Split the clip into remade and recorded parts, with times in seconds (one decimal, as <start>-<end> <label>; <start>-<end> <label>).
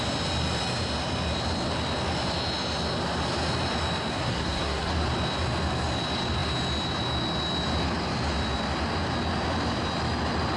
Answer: 0.0-4.1 recorded; 4.1-4.9 remade; 4.9-10.6 recorded